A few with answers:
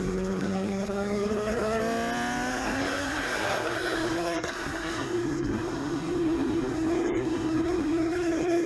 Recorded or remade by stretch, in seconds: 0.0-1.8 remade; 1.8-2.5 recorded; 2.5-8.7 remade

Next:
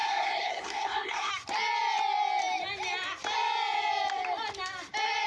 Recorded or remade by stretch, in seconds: 0.0-1.3 remade; 1.3-5.3 recorded

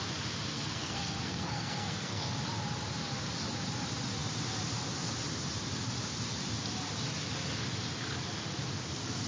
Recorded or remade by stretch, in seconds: 0.0-0.5 recorded; 0.5-2.4 remade; 2.4-9.3 recorded